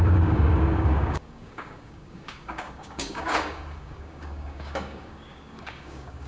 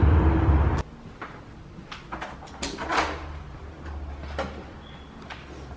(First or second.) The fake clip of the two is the first